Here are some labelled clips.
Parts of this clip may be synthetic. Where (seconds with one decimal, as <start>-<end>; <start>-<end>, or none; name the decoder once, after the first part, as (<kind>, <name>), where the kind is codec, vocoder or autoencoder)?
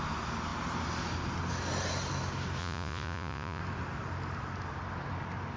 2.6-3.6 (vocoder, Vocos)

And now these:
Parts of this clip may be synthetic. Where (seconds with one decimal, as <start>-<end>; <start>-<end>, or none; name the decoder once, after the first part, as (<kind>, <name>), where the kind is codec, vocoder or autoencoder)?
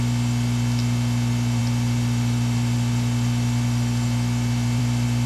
none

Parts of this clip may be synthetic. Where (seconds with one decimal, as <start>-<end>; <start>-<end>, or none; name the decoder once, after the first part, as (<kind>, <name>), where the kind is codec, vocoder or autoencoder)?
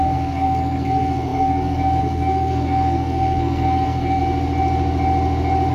0.0-4.2 (codec, SNAC)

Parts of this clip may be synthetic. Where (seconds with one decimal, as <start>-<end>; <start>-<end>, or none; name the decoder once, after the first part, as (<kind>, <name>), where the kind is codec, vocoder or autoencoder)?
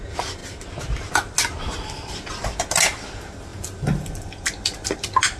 none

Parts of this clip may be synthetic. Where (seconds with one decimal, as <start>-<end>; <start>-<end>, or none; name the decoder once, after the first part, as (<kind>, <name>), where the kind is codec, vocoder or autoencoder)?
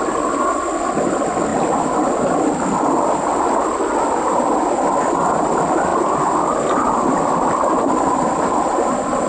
none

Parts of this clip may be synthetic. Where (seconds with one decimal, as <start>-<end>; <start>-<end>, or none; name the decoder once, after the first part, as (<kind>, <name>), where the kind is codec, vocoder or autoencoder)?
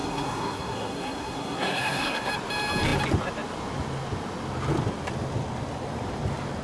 0.0-2.3 (codec, SNAC)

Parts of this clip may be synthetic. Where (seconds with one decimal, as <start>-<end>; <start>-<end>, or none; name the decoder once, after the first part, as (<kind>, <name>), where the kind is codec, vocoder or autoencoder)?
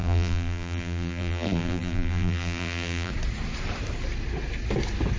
0.0-3.1 (vocoder, BigVGAN v2)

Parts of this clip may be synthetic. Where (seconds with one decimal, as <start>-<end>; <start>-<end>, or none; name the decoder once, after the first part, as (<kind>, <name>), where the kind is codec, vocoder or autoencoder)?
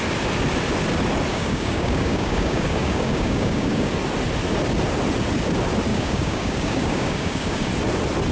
1.3-3.9 (codec, DAC); 5.9-7.7